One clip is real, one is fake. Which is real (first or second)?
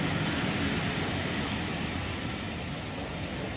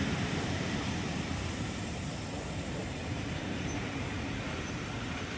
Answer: first